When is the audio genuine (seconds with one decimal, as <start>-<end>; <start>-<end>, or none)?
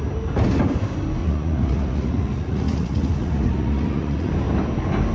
0.0-1.2; 4.3-5.1